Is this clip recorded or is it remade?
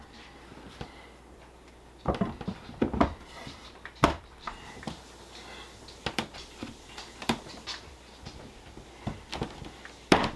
remade